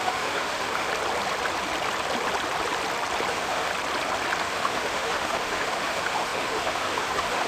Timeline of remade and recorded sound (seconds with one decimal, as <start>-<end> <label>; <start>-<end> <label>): 0.0-0.9 remade; 0.9-3.3 recorded; 3.3-3.7 remade; 3.7-4.4 recorded; 4.4-7.5 remade